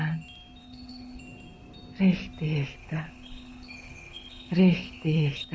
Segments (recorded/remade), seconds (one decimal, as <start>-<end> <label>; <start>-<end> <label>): 0.0-0.6 recorded; 0.6-1.2 remade; 1.2-2.8 recorded; 2.8-5.5 remade

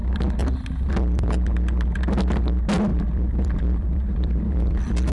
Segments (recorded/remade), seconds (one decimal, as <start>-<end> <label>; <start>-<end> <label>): 0.0-2.9 recorded; 2.9-5.1 remade

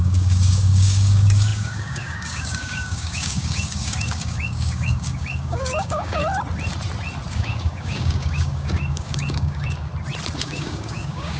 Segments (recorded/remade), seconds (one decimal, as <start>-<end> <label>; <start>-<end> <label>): 0.0-6.2 remade; 6.2-7.3 recorded; 7.3-9.9 remade; 9.9-10.4 recorded; 10.4-11.4 remade

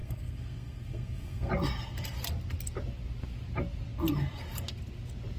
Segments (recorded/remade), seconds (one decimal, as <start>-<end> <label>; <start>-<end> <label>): 0.0-1.5 remade; 1.5-5.4 recorded

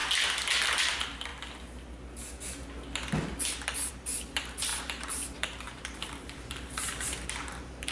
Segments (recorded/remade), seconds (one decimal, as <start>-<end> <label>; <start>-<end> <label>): 0.0-0.8 recorded; 0.8-1.3 remade; 1.3-3.9 recorded; 3.9-7.9 remade

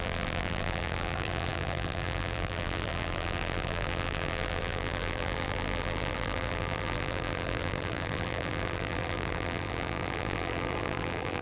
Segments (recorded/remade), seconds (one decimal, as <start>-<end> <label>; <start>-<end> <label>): 0.0-11.4 remade

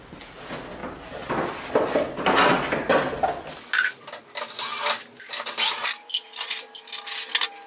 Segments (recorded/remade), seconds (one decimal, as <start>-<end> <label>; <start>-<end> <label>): 0.0-7.7 recorded